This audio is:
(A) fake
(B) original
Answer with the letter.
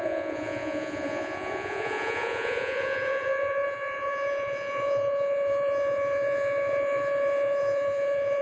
A